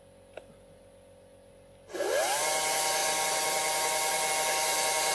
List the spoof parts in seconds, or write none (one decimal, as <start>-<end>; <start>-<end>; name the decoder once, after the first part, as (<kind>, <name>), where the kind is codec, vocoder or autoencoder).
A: none